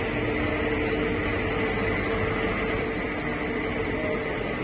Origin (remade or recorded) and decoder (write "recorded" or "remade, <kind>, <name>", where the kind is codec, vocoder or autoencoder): recorded